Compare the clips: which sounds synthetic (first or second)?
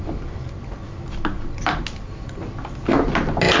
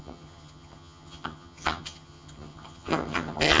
second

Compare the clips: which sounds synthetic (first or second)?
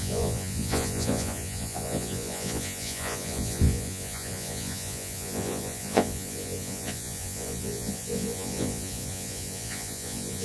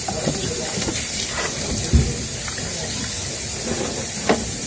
first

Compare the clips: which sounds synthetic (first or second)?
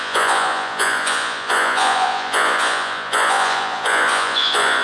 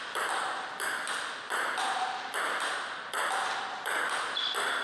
first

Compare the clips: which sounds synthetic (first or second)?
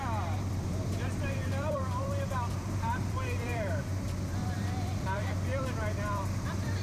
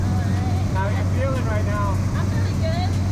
first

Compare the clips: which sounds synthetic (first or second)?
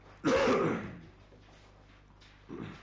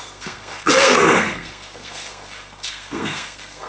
second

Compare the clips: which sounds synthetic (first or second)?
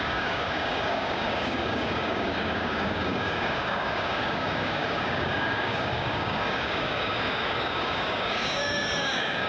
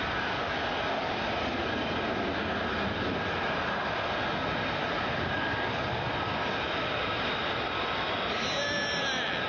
first